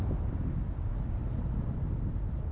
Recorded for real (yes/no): yes